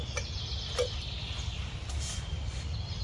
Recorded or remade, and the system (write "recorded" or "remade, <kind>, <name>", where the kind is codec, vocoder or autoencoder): recorded